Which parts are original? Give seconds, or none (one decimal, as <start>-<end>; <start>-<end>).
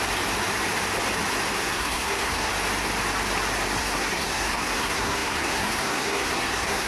0.0-1.6; 2.5-3.8